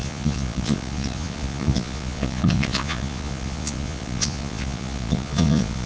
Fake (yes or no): yes